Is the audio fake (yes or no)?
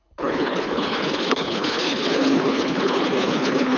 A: yes